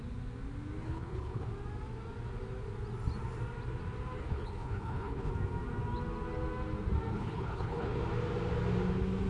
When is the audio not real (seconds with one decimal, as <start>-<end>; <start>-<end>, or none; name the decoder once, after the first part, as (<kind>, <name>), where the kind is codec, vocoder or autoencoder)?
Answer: 0.8-1.5 (codec, HILCodec); 4.2-5.3; 7.1-8.0